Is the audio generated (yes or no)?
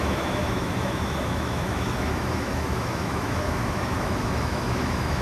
yes